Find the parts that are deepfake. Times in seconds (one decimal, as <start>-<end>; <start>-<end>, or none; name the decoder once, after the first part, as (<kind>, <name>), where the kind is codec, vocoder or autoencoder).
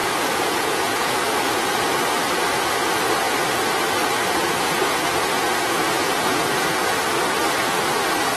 0.0-1.9 (vocoder, Vocos); 4.0-7.0